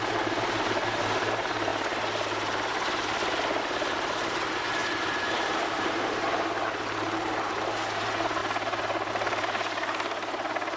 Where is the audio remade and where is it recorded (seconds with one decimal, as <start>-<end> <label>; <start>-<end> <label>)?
0.0-1.7 remade; 1.7-3.6 recorded; 3.6-8.4 remade; 8.4-9.1 recorded; 9.1-10.8 remade